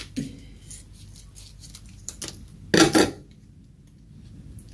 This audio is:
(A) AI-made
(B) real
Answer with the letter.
B